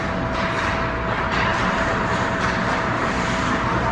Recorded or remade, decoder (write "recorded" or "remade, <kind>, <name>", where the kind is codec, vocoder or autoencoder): recorded